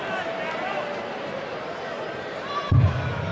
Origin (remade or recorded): remade